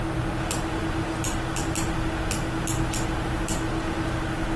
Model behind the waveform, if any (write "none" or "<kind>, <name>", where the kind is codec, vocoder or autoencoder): none